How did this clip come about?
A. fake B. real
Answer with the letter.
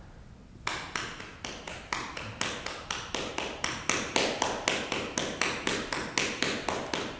B